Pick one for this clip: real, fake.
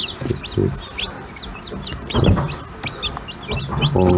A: real